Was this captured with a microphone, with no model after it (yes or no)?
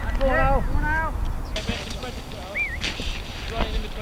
yes